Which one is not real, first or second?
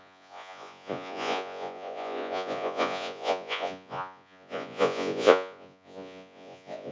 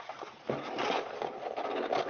first